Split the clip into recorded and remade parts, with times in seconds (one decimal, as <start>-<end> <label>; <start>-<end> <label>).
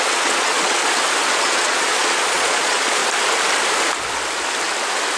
0.0-0.8 remade; 0.8-1.3 recorded; 1.3-3.0 remade; 3.0-5.2 recorded